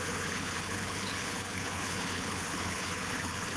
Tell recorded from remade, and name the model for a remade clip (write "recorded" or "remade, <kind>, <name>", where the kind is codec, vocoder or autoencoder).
remade, codec, HILCodec